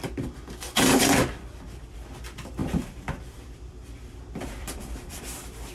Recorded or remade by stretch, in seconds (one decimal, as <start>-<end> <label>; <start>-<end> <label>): 0.0-2.6 recorded; 2.6-5.2 remade; 5.2-5.7 recorded